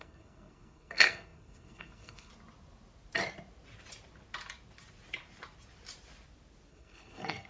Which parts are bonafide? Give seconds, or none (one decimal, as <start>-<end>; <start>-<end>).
2.3-6.7